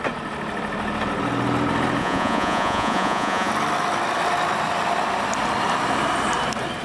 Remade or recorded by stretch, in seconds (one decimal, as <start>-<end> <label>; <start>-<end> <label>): 0.0-2.0 recorded; 2.0-3.5 remade; 3.5-6.8 recorded